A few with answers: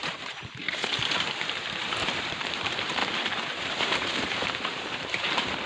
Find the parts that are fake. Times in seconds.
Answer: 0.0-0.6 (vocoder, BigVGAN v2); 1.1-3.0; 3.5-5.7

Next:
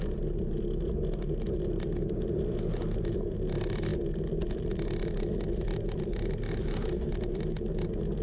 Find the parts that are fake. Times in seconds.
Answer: none

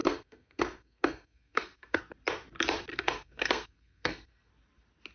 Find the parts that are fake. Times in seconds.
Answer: 0.0-2.0 (codec, SNAC); 2.9-4.5

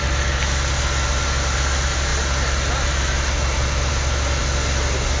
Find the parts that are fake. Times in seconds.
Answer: none

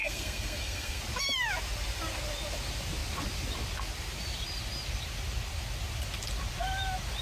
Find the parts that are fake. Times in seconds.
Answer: 0.0-1.0 (codec, SNAC)

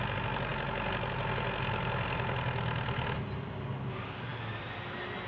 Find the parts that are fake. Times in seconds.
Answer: none

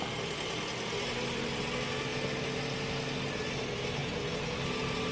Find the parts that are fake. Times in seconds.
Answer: none